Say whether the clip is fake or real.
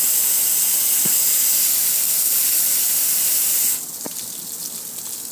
real